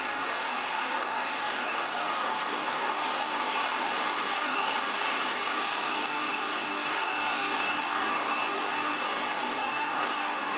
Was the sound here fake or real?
fake